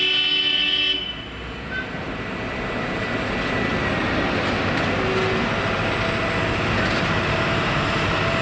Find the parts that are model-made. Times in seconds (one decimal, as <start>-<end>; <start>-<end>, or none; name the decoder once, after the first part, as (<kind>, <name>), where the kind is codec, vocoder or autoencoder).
none